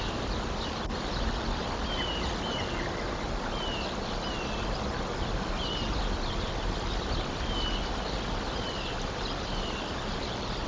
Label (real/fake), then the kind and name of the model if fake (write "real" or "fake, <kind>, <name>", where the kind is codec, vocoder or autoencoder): real